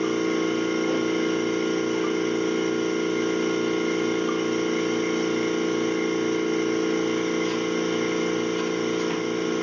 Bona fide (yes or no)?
yes